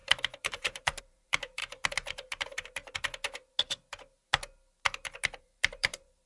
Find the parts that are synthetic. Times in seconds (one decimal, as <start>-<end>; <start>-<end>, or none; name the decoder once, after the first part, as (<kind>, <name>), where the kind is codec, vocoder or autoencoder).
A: 0.0-1.6 (vocoder, BigVGAN v2); 5.4-6.3